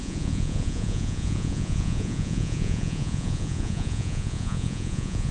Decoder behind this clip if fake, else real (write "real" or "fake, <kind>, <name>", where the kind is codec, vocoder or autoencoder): fake, vocoder, Vocos